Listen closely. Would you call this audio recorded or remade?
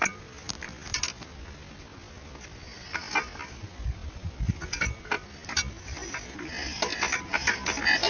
recorded